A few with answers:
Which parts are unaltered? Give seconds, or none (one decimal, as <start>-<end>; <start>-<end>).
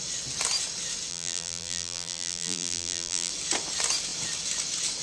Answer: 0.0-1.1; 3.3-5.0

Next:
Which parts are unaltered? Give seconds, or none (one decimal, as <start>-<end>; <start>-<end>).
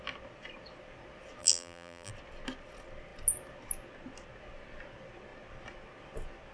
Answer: 0.0-1.4; 2.1-6.5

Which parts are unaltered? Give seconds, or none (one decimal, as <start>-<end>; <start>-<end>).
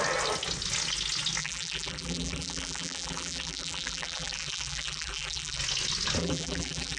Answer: 0.0-1.4; 5.6-6.2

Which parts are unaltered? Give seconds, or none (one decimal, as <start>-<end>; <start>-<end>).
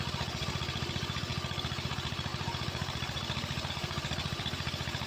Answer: 1.3-1.9